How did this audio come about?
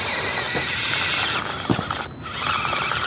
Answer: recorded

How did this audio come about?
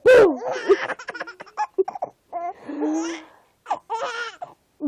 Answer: recorded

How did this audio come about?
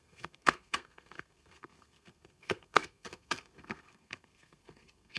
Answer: remade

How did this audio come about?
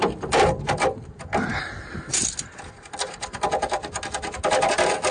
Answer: recorded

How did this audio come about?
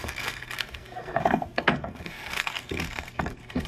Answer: remade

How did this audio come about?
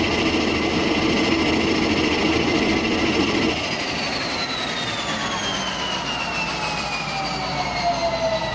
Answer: recorded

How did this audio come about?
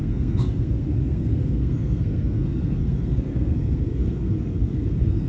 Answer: remade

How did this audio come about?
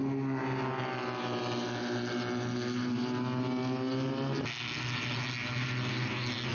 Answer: recorded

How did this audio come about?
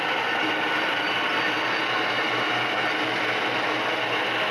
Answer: recorded